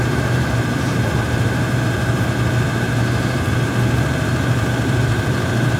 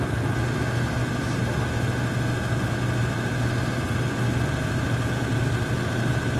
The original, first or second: second